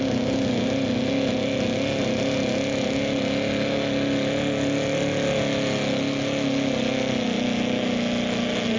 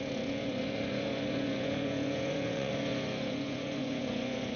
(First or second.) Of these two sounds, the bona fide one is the first